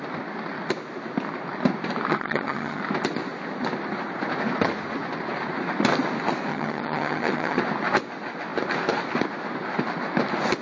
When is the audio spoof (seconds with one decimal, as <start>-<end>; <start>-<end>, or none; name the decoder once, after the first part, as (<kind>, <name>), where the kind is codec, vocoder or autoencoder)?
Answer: 2.1-2.8 (vocoder, HiFi-GAN); 6.5-7.6